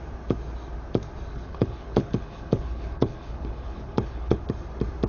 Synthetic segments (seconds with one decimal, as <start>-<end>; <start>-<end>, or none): 1.3-4.4